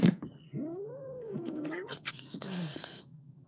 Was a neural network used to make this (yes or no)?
yes